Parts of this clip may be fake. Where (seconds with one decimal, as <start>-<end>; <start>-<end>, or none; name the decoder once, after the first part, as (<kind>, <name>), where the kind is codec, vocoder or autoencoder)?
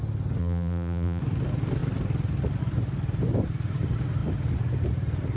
0.4-1.2 (vocoder, BigVGAN v2)